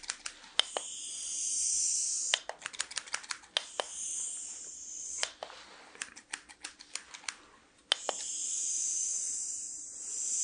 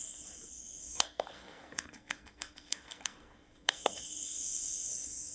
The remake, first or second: second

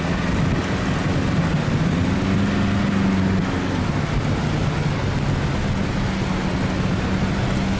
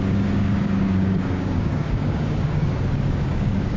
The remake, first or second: second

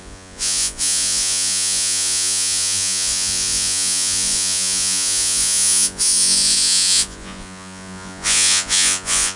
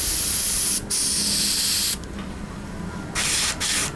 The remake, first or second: first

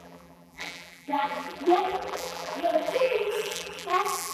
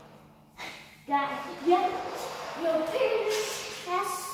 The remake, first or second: first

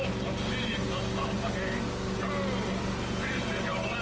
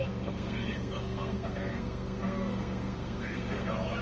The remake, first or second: second